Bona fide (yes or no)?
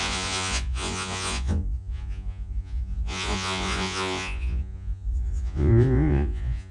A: no